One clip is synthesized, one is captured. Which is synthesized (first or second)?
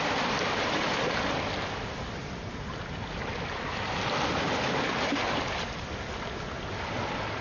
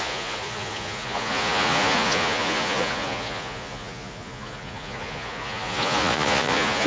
second